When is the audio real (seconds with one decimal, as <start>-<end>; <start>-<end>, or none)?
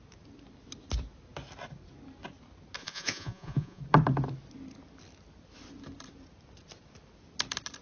0.0-2.8; 3.8-7.8